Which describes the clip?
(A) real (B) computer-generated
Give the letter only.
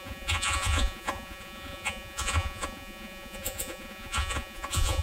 B